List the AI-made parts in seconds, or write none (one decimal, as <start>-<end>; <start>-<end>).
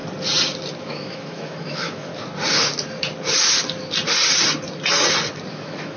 0.8-2.1; 5.5-6.0